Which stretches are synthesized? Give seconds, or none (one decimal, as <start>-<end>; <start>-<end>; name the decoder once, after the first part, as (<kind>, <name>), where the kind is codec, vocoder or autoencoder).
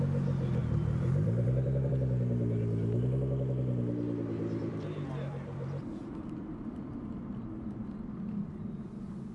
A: 0.6-1.9 (vocoder, BigVGAN v2); 4.6-8.9